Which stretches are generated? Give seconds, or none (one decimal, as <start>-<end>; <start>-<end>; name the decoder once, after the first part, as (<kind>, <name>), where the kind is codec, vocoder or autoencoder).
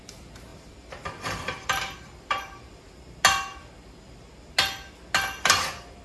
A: 0.5-2.8 (vocoder, BigVGAN v2)